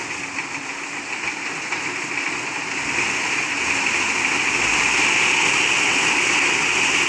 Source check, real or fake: real